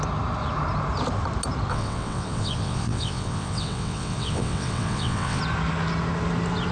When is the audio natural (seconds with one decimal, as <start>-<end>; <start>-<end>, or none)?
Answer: 0.0-1.7; 5.4-6.7